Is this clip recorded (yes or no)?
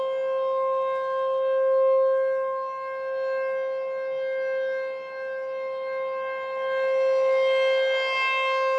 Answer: yes